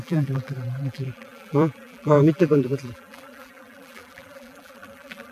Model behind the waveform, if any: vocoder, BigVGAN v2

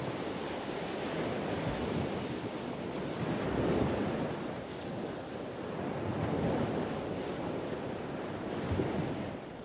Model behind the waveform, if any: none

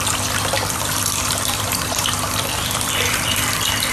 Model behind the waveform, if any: vocoder, BigVGAN v2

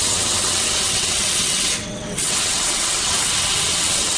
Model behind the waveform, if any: vocoder, WaveNeXt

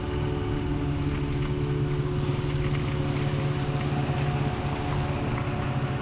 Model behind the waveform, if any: none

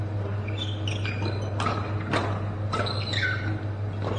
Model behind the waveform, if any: none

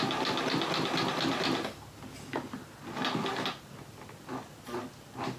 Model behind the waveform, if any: none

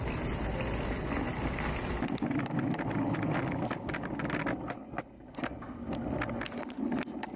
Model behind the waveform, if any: none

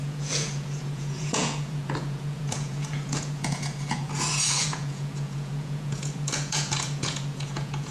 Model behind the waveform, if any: vocoder, Vocos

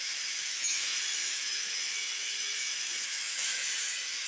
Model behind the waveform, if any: autoencoder, DAC-VAE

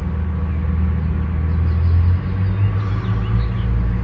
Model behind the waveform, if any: none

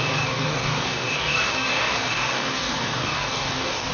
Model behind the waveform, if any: codec, DAC